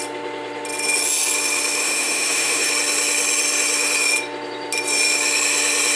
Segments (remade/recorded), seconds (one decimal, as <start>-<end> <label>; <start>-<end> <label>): 0.0-1.8 recorded; 1.8-2.7 remade; 2.7-6.0 recorded